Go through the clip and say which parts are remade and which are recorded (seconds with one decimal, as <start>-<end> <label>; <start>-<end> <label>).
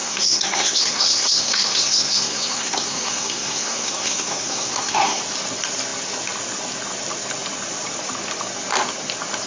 0.0-5.2 remade; 5.2-9.5 recorded